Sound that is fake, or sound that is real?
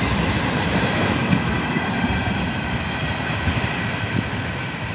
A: real